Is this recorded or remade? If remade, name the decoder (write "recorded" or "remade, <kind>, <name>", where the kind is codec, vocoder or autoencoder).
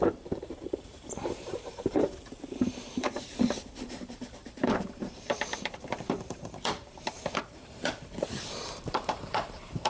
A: remade, vocoder, BigVGAN v2